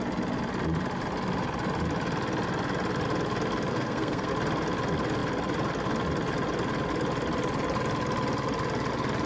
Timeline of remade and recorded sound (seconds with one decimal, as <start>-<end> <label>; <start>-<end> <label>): 0.0-3.7 recorded; 3.7-4.3 remade; 4.3-9.3 recorded